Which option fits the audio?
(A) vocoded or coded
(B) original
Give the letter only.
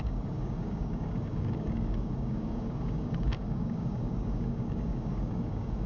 A